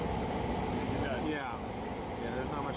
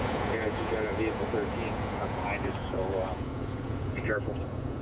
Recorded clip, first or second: first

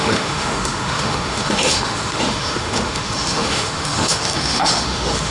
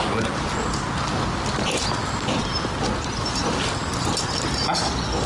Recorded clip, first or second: second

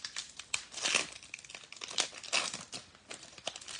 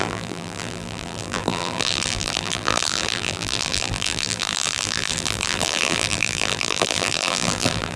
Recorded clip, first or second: first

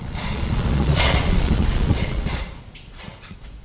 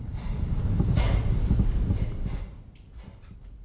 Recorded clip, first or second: second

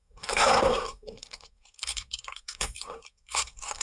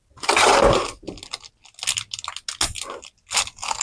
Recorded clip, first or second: second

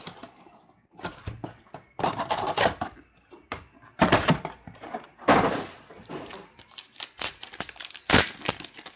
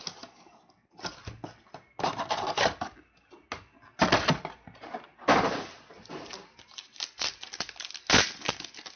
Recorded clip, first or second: second